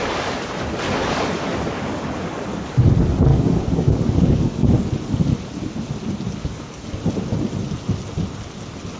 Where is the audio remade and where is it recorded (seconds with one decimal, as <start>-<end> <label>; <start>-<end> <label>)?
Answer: 0.0-1.0 recorded; 1.0-2.9 remade; 2.9-3.3 recorded; 3.3-4.7 remade; 4.7-6.4 recorded; 6.4-7.0 remade; 7.0-9.0 recorded